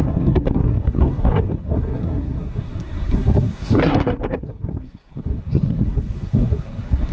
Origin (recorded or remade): remade